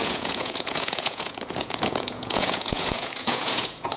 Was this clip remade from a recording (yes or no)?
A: yes